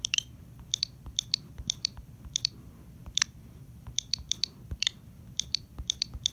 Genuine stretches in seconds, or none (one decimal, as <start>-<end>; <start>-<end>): none